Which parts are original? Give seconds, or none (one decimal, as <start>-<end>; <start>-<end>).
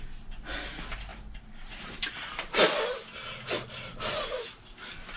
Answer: 0.0-1.1; 2.0-5.2